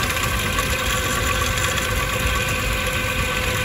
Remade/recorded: recorded